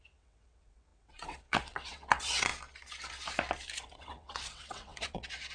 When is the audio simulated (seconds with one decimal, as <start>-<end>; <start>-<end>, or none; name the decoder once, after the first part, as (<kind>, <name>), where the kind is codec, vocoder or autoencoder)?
0.0-2.5 (vocoder, WaveNeXt); 3.8-5.5